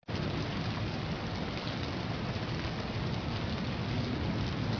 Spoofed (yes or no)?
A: no